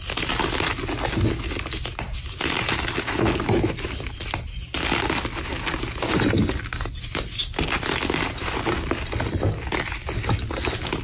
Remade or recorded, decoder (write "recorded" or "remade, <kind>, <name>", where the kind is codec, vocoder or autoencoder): recorded